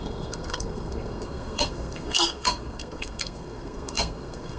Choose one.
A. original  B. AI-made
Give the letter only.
B